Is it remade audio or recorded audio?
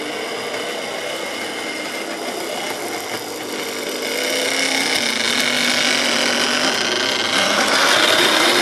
recorded